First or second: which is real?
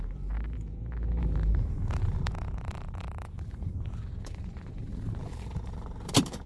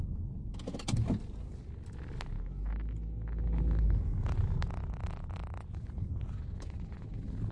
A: second